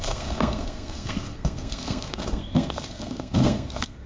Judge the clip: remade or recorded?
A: remade